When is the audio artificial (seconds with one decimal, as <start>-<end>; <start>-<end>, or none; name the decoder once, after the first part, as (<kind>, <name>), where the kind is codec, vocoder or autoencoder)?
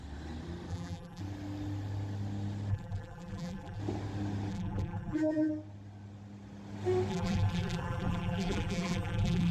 0.7-1.2 (vocoder, BigVGAN v2); 2.7-3.8; 4.5-5.5; 7.1-9.5